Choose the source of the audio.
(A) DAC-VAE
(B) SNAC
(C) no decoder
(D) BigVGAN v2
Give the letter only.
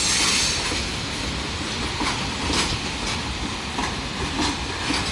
C